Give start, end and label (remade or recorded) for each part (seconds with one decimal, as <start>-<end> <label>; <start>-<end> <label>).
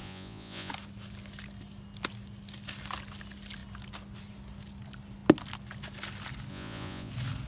0.0-0.7 remade; 0.7-6.5 recorded; 6.5-7.1 remade; 7.1-7.5 recorded